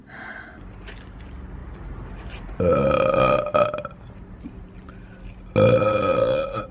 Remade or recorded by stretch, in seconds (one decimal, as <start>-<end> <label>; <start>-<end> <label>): 0.0-1.6 recorded; 1.6-4.7 remade; 4.7-6.7 recorded